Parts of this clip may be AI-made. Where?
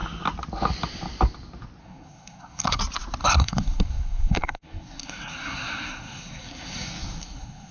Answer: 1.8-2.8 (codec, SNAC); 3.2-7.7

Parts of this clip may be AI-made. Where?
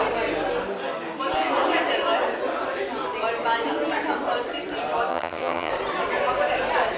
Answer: 5.1-5.7 (vocoder, HiFi-GAN)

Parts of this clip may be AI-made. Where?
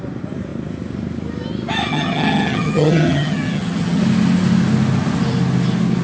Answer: 1.9-4.0 (vocoder, HiFi-GAN)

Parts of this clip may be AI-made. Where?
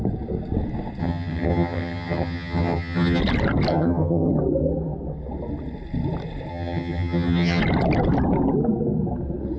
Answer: 1.0-3.2 (vocoder, HiFi-GAN); 3.7-4.3; 6.5-7.6